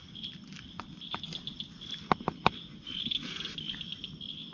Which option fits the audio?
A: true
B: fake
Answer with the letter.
A